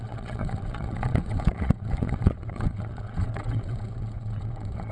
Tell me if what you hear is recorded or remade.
remade